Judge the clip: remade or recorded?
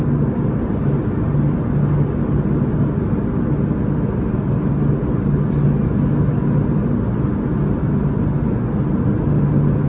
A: recorded